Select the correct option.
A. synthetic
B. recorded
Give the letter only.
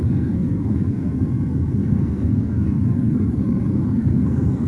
A